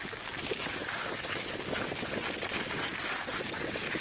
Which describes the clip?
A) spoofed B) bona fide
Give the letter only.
B